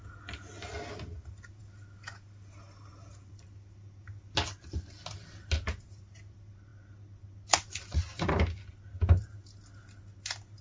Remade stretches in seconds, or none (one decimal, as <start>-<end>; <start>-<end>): none